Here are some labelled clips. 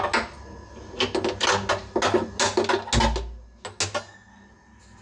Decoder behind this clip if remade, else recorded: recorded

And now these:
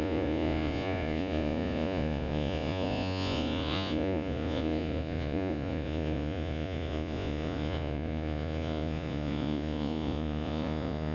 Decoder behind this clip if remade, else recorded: remade, vocoder, Vocos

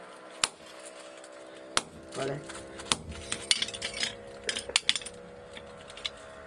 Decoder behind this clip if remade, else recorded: recorded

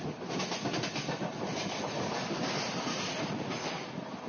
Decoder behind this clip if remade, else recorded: recorded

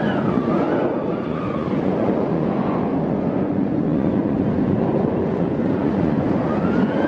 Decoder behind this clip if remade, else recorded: remade, vocoder, Vocos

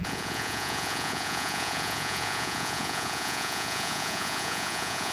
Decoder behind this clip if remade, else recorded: remade, vocoder, Vocos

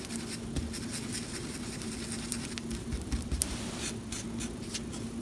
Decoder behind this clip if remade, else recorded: recorded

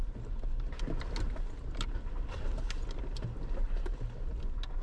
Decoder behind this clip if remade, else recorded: recorded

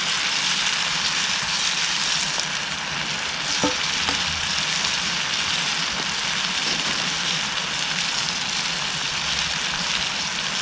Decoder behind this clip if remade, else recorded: recorded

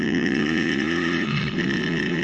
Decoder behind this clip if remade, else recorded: remade, vocoder, Vocos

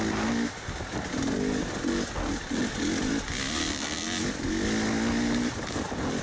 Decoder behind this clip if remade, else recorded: recorded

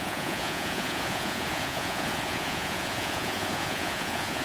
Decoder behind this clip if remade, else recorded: remade, vocoder, Vocos